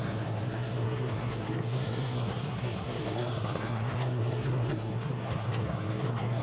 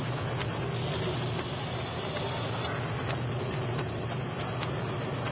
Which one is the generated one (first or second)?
first